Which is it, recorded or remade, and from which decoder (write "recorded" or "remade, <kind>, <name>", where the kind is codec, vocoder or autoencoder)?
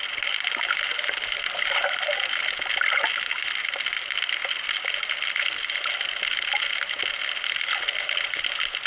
recorded